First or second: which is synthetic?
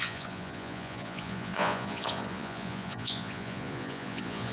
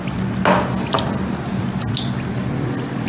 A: first